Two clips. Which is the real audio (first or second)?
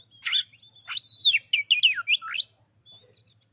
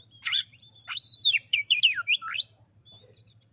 first